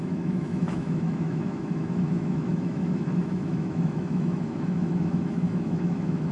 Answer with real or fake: fake